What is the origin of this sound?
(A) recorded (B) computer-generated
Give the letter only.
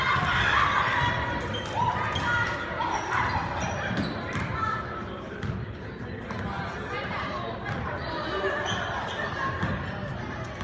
A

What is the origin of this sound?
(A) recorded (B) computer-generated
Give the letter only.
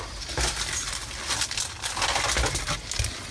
A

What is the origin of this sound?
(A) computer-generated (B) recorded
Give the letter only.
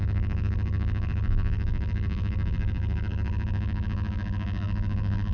A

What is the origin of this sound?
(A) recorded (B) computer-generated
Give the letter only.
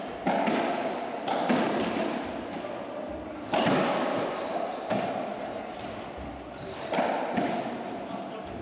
A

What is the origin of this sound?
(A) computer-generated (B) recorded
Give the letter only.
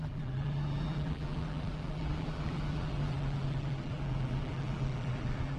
A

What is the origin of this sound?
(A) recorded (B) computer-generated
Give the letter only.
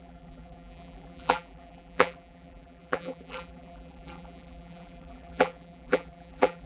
B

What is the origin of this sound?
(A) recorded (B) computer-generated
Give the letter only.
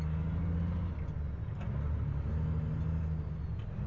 A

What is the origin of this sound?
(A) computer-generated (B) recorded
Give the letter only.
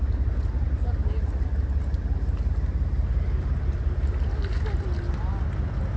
B